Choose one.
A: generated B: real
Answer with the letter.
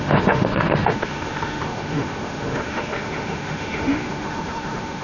A